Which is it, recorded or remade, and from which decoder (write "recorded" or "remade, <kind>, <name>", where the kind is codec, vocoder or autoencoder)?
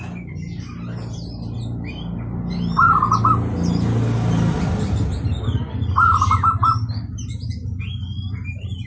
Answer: recorded